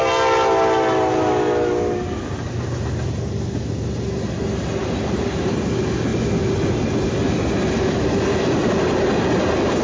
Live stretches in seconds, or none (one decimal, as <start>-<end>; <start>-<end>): 0.0-9.8